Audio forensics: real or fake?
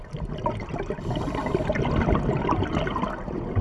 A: real